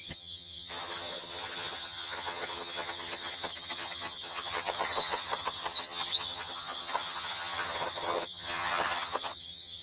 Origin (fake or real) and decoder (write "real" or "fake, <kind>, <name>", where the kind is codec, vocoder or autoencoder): fake, vocoder, HiFi-GAN